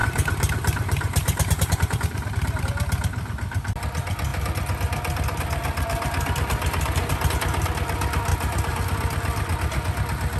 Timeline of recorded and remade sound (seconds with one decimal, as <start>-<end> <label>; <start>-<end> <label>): 0.0-2.6 remade; 2.6-10.4 recorded